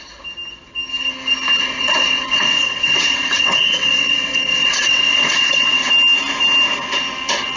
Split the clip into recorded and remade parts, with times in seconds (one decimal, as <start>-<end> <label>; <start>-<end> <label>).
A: 0.0-1.6 recorded; 1.6-5.9 remade; 5.9-7.6 recorded

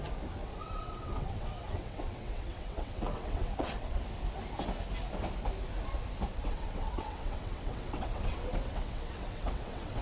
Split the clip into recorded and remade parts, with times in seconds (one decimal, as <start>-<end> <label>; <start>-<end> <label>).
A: 0.0-0.4 recorded; 0.4-4.0 remade; 4.0-6.3 recorded; 6.3-10.0 remade

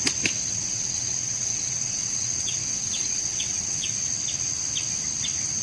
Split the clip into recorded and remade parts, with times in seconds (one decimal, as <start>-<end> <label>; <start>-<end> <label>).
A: 0.0-0.5 recorded; 0.5-3.9 remade; 3.9-5.6 recorded